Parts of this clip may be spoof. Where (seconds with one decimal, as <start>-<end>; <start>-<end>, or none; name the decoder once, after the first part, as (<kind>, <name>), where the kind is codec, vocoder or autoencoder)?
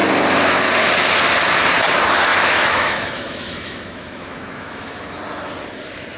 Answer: 2.3-5.2 (autoencoder, DAC-VAE)